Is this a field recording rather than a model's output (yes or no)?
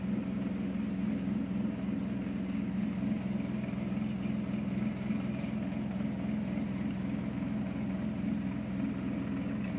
yes